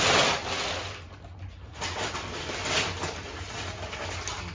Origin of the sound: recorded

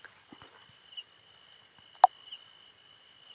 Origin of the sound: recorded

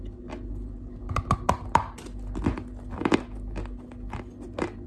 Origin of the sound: recorded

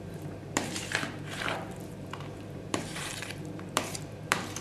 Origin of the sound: remade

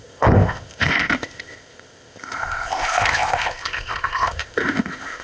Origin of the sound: remade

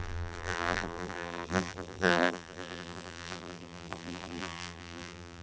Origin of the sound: remade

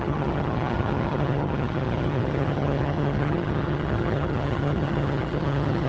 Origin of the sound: remade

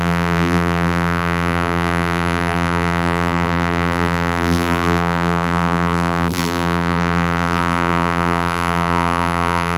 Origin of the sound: remade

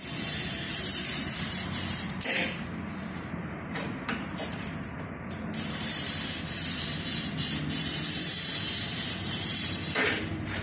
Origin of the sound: remade